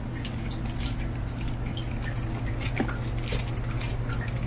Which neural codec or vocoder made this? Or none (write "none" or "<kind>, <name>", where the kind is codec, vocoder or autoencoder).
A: none